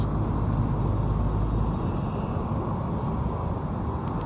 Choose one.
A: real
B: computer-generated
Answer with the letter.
A